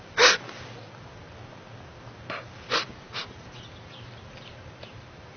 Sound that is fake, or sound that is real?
real